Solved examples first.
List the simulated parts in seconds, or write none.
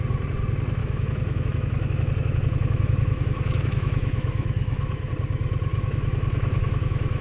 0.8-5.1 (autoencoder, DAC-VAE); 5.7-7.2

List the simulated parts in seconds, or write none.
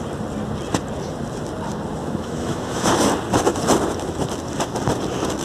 2.0-2.9 (autoencoder, DAC-VAE)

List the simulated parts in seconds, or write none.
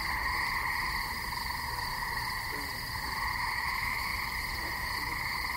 3.4-4.1 (autoencoder, DAC-VAE)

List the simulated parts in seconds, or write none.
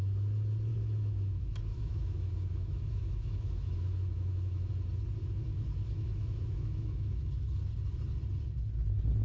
0.7-4.7 (autoencoder, DAC-VAE); 5.2-7.3